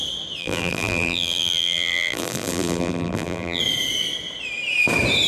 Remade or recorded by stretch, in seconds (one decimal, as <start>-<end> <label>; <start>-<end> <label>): 0.0-0.4 recorded; 0.4-3.6 remade; 3.6-5.3 recorded